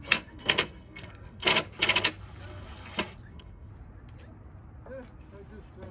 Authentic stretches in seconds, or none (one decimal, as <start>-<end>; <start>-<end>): 1.5-3.3; 3.7-5.9